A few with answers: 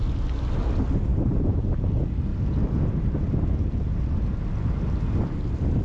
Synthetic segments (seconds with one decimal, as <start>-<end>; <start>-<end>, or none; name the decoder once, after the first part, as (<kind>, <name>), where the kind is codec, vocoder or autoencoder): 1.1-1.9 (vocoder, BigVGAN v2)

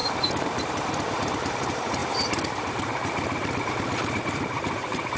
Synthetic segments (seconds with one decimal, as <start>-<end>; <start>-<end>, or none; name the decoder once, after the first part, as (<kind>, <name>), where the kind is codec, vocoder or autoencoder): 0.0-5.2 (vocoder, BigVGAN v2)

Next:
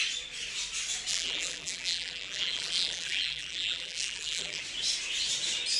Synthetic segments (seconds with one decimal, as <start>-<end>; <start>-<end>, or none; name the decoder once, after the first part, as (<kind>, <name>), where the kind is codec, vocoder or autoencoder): 1.1-4.6 (vocoder, BigVGAN v2)